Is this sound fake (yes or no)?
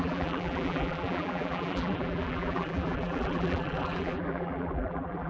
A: yes